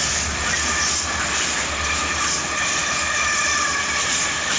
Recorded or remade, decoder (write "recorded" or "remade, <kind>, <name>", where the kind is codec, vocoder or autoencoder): remade, vocoder, BigVGAN v2